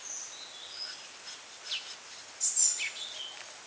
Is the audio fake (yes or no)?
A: no